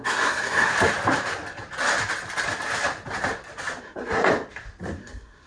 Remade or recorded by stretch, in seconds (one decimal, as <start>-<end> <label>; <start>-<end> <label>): 0.0-0.7 remade; 0.7-3.8 recorded; 3.8-4.3 remade; 4.3-5.0 recorded; 5.0-5.5 remade